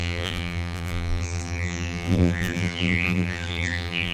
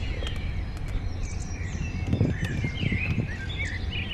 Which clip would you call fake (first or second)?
first